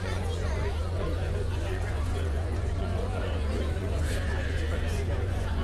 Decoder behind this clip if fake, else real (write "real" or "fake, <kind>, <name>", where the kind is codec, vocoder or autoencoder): fake, vocoder, Vocos